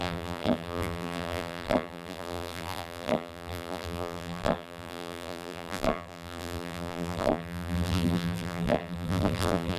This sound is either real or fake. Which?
fake